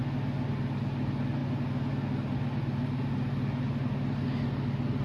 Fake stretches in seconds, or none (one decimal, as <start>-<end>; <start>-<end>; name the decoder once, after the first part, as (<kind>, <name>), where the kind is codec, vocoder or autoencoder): none